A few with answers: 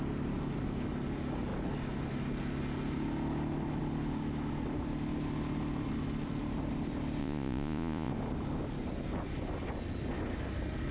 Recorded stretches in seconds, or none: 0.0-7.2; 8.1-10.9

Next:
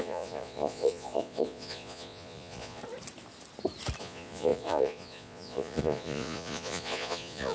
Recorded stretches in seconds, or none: 2.8-4.0

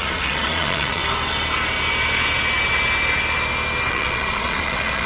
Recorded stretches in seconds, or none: 1.0-3.9

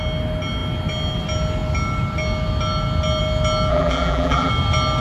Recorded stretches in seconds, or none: 0.0-3.7; 4.5-5.0

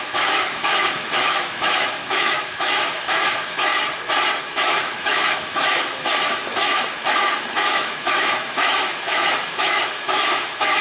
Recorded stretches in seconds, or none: 3.7-4.4

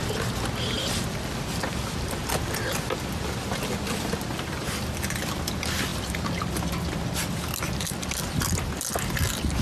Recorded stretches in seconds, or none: 0.0-9.6